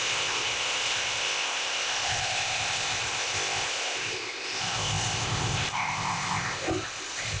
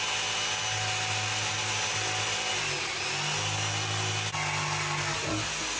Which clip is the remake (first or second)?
first